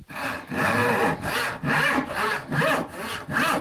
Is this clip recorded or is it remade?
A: recorded